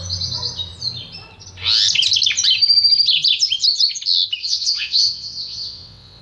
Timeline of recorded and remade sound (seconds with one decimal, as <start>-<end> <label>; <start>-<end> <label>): 0.0-4.4 recorded; 4.4-6.2 remade